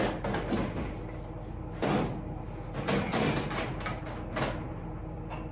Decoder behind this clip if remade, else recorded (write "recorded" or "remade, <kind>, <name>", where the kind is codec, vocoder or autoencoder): recorded